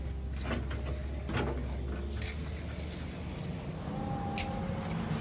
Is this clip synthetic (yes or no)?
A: no